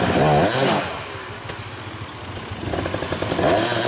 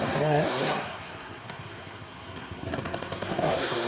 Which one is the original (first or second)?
first